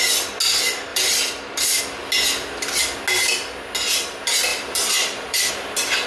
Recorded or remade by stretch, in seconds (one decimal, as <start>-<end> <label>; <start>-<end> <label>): 0.0-0.9 recorded; 0.9-1.8 remade; 1.8-4.5 recorded; 4.5-5.5 remade; 5.5-6.1 recorded

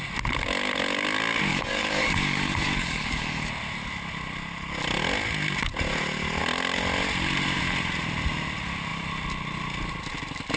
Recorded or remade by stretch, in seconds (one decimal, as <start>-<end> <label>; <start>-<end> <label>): 0.0-1.5 recorded; 1.5-3.5 remade; 3.5-10.6 recorded

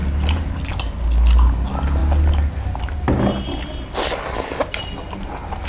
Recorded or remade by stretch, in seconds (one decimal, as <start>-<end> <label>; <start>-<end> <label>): 0.0-5.7 recorded

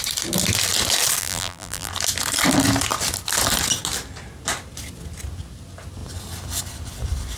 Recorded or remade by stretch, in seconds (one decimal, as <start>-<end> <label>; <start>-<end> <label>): 0.0-1.2 recorded; 1.2-1.9 remade; 1.9-7.4 recorded

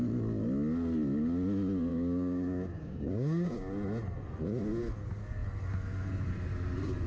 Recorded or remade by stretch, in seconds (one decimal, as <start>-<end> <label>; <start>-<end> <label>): 0.0-1.9 recorded; 1.9-3.7 remade; 3.7-7.1 recorded

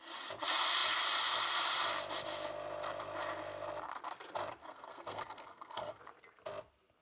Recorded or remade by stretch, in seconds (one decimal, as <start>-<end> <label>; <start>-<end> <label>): 0.0-4.6 recorded; 4.6-6.0 remade; 6.0-7.0 recorded